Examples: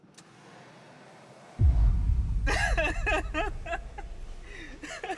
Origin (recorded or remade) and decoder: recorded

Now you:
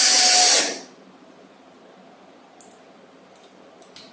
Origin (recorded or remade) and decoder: recorded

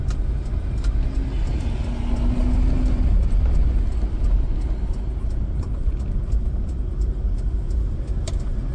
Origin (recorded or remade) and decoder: recorded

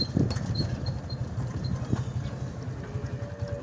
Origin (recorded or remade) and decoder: recorded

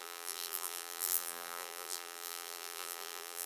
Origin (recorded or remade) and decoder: remade, vocoder, BigVGAN v2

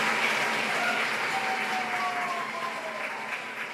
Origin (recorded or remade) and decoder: recorded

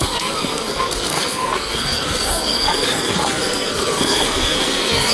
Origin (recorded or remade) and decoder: remade, codec, SNAC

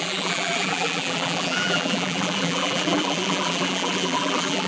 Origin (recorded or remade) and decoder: remade, vocoder, BigVGAN v2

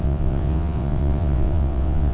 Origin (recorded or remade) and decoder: remade, vocoder, WaveNeXt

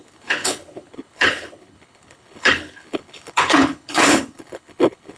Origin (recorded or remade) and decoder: remade, codec, HILCodec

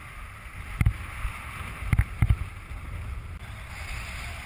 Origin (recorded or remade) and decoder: recorded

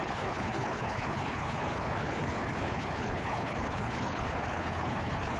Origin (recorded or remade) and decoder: remade, codec, HILCodec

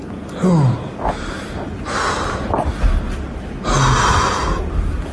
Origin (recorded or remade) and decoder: recorded